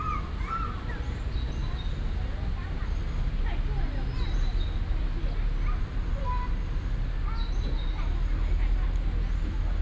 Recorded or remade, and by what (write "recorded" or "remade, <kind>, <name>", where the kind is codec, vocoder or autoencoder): recorded